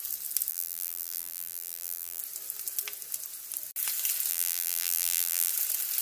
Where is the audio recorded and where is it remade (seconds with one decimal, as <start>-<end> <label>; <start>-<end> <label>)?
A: 0.0-0.5 recorded; 0.5-2.2 remade; 2.2-4.3 recorded; 4.3-5.5 remade; 5.5-6.0 recorded

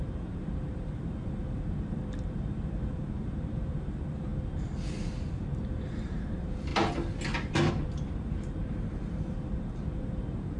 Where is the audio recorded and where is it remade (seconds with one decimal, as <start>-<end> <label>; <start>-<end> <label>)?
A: 0.0-4.3 remade; 4.3-5.4 recorded; 5.4-6.7 remade; 6.7-7.7 recorded; 7.7-10.6 remade

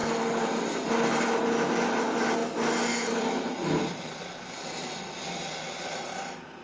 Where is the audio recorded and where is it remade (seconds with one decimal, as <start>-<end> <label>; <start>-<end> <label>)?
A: 0.0-2.4 recorded; 2.4-2.9 remade; 2.9-6.6 recorded

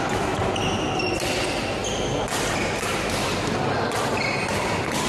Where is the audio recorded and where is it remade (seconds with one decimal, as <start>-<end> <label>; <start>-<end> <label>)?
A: 0.0-5.1 recorded

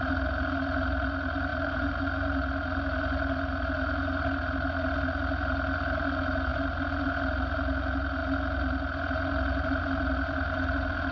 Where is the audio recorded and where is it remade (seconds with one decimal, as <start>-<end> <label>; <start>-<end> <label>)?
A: 0.0-1.5 recorded; 1.5-2.0 remade; 2.0-11.1 recorded

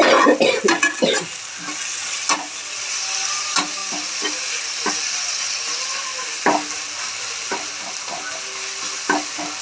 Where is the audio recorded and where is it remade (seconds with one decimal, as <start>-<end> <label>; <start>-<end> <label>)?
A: 0.0-9.6 recorded

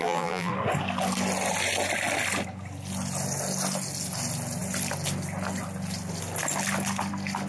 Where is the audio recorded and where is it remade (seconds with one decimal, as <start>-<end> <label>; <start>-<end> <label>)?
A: 0.0-0.5 remade; 0.5-7.5 recorded

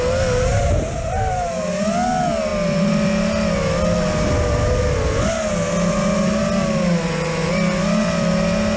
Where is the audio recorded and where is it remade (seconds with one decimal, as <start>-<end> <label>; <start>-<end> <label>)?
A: 0.0-0.5 recorded; 0.5-1.9 remade; 1.9-8.8 recorded